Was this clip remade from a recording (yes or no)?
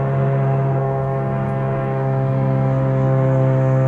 yes